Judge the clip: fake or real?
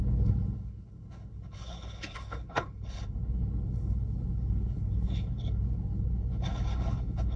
fake